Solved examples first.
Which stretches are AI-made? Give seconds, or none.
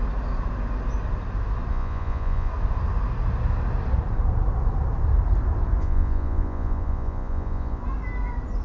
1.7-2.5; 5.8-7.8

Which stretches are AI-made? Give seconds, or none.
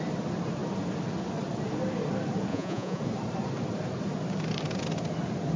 2.5-3.0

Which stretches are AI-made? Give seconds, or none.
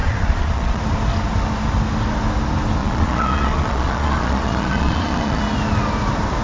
0.0-0.8; 2.8-5.4